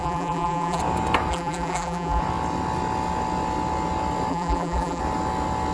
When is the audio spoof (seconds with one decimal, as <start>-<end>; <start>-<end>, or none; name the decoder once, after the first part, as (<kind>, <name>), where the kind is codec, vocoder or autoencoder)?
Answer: 0.0-0.8 (vocoder, BigVGAN v2); 1.3-2.2; 4.3-5.0

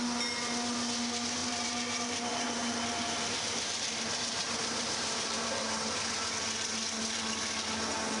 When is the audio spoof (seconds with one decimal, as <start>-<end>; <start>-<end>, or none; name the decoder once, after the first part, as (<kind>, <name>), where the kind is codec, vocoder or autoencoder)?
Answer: 1.4-6.3 (vocoder, BigVGAN v2)

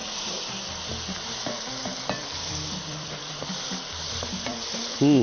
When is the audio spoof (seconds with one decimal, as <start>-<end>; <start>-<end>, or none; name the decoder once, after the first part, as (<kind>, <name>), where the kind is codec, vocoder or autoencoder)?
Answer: 0.0-0.5 (vocoder, BigVGAN v2); 2.2-3.2; 4.5-5.2

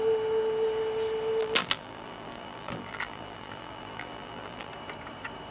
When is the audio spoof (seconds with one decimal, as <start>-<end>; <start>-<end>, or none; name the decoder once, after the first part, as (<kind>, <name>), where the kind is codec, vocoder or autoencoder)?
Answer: 1.4-4.7 (vocoder, BigVGAN v2)

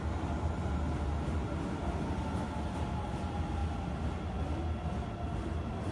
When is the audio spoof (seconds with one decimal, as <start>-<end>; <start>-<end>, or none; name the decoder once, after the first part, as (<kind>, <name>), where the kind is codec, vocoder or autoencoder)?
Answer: none